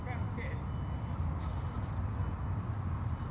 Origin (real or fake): real